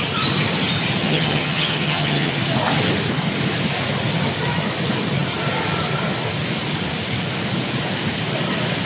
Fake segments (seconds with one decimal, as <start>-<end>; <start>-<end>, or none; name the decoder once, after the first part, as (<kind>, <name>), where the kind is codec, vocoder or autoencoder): 1.0-2.3 (vocoder, HiFi-GAN)